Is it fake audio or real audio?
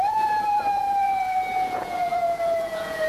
fake